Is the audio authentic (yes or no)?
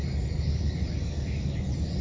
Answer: yes